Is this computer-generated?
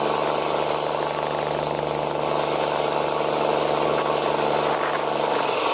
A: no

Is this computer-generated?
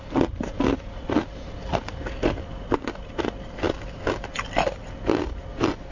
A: no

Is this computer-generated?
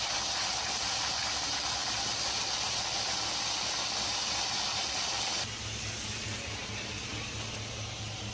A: no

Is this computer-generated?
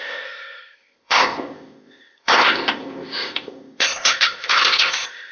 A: yes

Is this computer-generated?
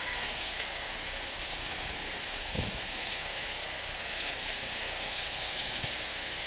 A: yes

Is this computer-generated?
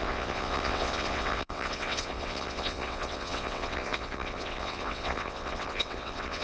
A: yes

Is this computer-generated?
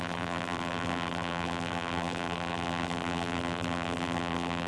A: yes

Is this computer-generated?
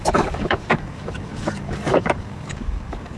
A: yes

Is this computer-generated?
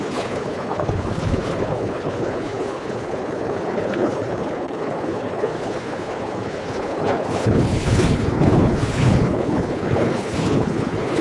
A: yes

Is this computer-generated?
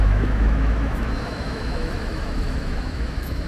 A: yes